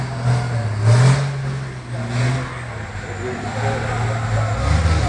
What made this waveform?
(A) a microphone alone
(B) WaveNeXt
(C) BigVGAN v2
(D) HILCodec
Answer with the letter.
A